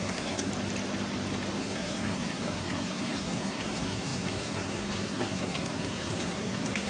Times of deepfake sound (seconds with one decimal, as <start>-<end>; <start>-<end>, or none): 0.0-0.5; 1.6-6.9

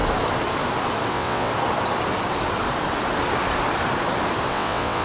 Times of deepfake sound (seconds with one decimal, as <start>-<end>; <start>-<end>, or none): 1.1-1.5; 4.5-5.0